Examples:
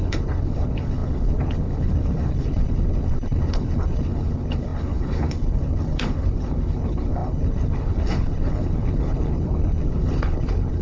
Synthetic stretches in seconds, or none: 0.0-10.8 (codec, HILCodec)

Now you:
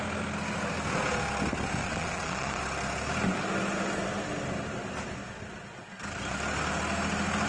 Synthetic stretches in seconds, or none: 1.8-2.6 (vocoder, Vocos)

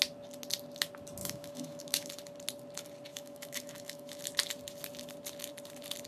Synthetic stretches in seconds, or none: 1.2-2.1 (autoencoder, DAC-VAE); 3.1-4.2